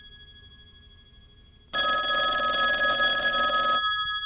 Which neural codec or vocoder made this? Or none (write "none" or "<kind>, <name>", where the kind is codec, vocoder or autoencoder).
none